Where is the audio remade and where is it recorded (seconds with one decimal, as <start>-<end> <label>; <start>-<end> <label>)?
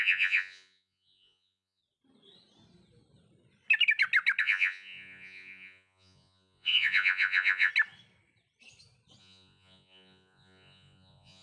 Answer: 0.0-1.8 remade; 1.8-4.4 recorded; 4.4-7.7 remade; 7.7-9.2 recorded; 9.2-11.4 remade